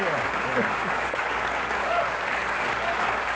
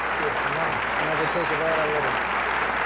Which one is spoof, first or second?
first